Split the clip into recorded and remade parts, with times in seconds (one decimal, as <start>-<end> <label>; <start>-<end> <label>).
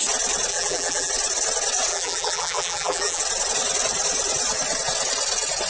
0.0-0.5 recorded; 0.5-1.1 remade; 1.1-1.9 recorded; 1.9-3.2 remade; 3.2-5.7 recorded